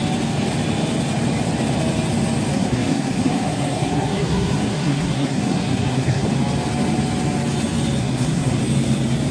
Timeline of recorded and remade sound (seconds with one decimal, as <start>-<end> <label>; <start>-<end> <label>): 0.0-2.5 recorded; 2.5-6.3 remade; 6.3-8.0 recorded; 8.0-8.6 remade; 8.6-9.3 recorded